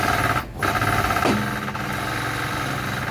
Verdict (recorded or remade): recorded